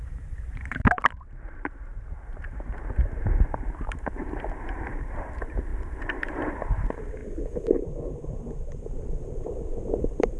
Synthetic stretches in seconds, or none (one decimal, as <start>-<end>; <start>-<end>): 0.0-7.2; 8.2-10.4